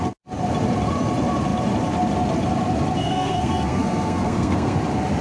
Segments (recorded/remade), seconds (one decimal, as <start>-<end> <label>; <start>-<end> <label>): 0.0-3.0 recorded; 3.0-4.8 remade; 4.8-5.2 recorded